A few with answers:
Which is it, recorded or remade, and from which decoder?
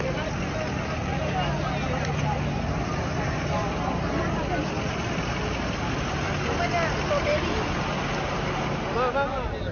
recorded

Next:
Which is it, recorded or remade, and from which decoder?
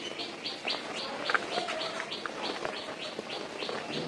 recorded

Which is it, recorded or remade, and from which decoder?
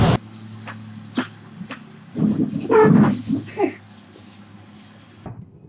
recorded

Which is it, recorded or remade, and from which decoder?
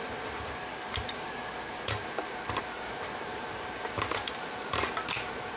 recorded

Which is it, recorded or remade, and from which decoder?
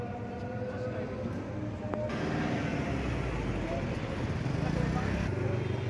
recorded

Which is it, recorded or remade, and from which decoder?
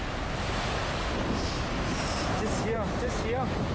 recorded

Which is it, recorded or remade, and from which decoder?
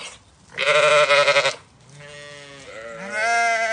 recorded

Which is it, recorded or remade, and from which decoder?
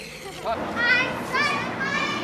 recorded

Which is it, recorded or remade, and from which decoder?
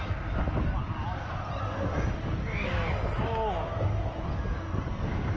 recorded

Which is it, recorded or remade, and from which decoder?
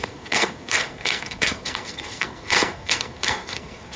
remade, codec, SNAC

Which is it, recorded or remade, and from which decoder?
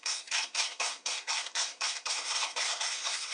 remade, codec, SNAC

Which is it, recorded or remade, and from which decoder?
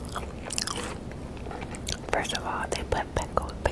recorded